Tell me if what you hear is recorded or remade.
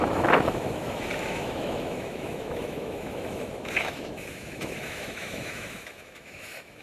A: remade